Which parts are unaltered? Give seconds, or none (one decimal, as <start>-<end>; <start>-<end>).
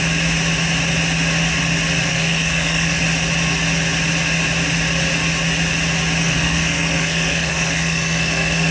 0.0-2.1; 3.0-6.2